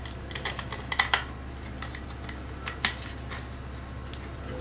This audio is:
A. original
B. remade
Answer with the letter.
A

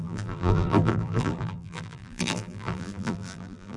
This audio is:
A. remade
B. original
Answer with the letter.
A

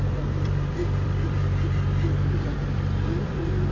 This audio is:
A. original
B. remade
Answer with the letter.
B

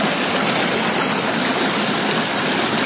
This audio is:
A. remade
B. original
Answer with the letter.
B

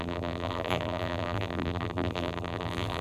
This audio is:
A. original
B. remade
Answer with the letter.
B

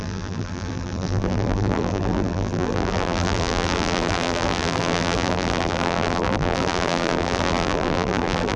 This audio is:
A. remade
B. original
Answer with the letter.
A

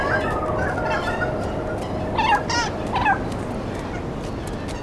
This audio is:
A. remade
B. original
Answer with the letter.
B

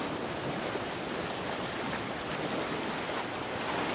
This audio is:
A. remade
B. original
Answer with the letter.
B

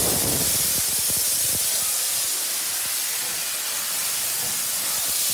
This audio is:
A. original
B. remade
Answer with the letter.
A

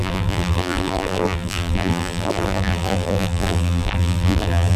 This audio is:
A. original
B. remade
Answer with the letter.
B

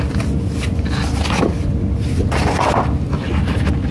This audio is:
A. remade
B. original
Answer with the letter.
B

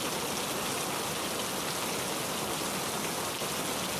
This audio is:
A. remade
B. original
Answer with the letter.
B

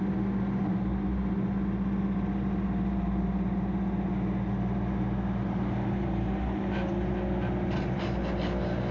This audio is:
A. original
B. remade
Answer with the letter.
A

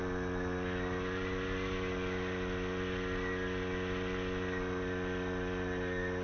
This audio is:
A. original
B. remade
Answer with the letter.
A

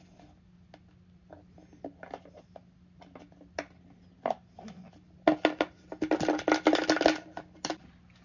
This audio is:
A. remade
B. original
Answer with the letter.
B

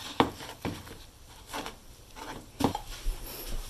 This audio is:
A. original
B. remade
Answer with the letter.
B